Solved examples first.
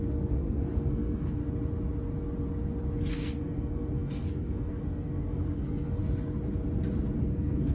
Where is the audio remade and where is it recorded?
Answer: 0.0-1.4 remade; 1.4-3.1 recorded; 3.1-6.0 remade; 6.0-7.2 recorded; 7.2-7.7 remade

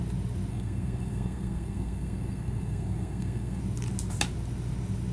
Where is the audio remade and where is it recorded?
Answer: 0.0-0.5 recorded; 0.5-3.6 remade; 3.6-5.1 recorded

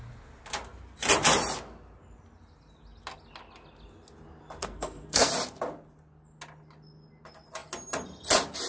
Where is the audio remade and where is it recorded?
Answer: 0.0-4.6 recorded; 4.6-5.3 remade; 5.3-8.7 recorded

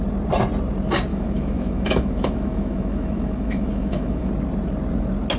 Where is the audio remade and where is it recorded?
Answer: 0.0-1.1 recorded; 1.1-4.3 remade; 4.3-5.4 recorded

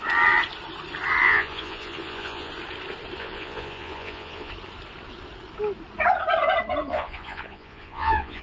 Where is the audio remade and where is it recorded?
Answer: 0.0-1.2 recorded; 1.2-2.5 remade; 2.5-3.2 recorded; 3.2-4.5 remade; 4.5-6.9 recorded; 6.9-8.4 remade